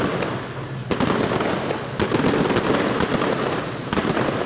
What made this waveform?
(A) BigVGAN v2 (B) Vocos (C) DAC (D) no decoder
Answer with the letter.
D